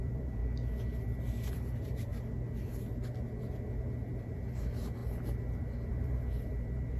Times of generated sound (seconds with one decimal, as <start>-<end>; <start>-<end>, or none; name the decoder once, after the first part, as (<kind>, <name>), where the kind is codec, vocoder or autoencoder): 0.0-0.4 (vocoder, BigVGAN v2); 1.5-2.1; 3.4-5.0; 5.6-7.0